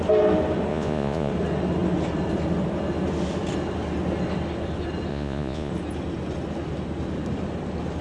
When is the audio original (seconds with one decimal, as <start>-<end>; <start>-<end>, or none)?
0.0-0.7; 1.3-5.1; 5.7-8.0